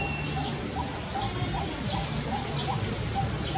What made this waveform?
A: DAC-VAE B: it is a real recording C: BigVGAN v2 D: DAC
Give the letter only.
B